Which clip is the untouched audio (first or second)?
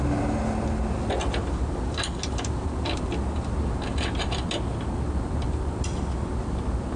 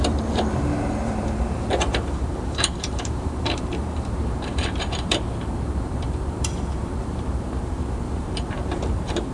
first